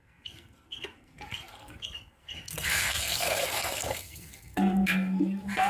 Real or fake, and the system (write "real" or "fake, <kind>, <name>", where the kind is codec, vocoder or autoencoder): fake, codec, SNAC